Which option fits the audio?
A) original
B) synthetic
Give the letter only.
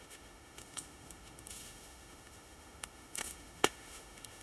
B